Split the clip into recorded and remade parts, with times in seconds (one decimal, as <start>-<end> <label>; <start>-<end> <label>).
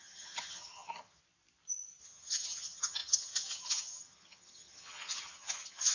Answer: 0.0-1.2 remade; 1.2-2.0 recorded; 2.0-5.9 remade